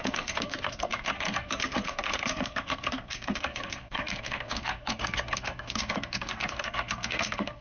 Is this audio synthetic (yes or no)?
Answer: yes